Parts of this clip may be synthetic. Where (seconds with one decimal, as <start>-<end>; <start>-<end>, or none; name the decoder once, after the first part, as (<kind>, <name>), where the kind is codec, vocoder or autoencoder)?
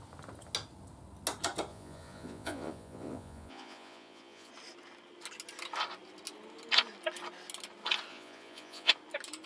1.7-4.5 (vocoder, Vocos); 8.1-8.9